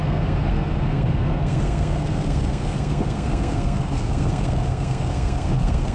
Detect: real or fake fake